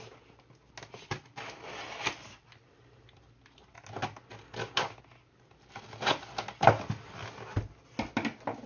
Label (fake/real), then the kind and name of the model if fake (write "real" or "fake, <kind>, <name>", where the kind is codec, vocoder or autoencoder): real